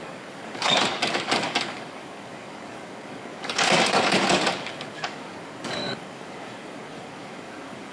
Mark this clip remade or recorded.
remade